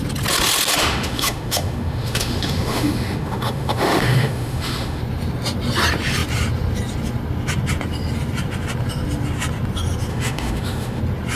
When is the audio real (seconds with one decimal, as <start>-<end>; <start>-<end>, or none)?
0.0-0.8; 5.0-10.1; 11.0-11.4